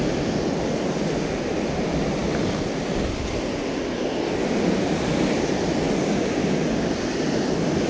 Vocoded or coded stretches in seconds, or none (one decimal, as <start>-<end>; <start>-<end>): none